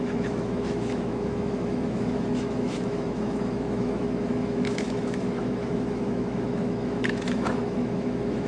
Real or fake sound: fake